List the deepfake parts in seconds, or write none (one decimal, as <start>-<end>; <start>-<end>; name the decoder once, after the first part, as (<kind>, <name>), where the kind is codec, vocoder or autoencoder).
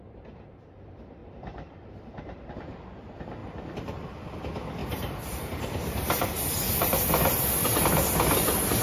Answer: 1.2-2.5 (vocoder, BigVGAN v2); 3.4-4.0; 4.8-7.0